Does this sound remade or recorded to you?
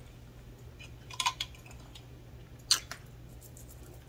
recorded